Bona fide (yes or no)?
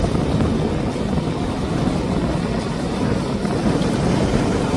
yes